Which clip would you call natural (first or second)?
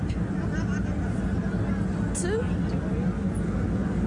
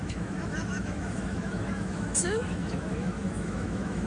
first